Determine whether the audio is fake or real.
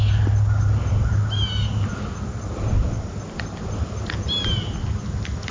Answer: real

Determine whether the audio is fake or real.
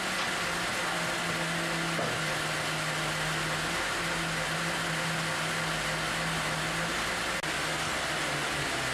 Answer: real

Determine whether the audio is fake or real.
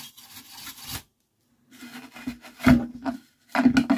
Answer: real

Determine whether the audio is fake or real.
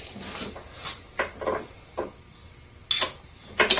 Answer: real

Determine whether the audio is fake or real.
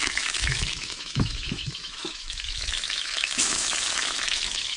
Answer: fake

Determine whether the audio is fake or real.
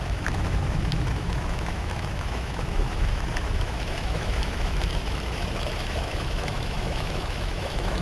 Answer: fake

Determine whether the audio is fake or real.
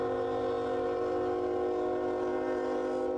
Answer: real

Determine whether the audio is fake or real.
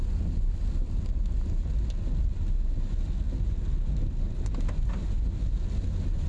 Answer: real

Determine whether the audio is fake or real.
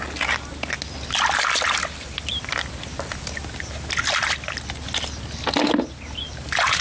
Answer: real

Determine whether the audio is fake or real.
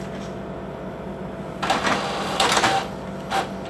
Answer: real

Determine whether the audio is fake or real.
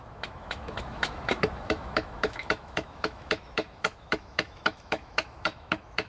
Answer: fake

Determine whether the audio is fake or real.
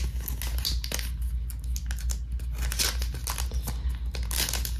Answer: real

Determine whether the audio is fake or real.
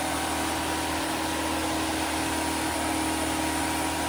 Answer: real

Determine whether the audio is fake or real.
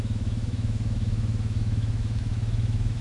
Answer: fake